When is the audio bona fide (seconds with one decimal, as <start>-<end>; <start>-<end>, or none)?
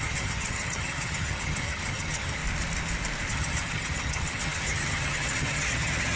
2.4-3.3